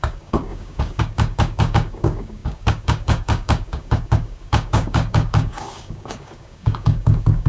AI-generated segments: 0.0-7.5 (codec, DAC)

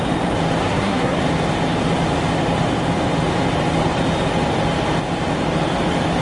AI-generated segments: 0.6-1.2 (codec, SNAC)